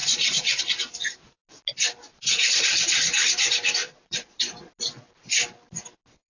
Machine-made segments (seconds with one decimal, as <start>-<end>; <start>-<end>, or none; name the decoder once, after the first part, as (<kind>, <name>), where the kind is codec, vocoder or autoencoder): 0.0-0.6 (vocoder, Vocos); 2.1-3.3; 3.8-4.7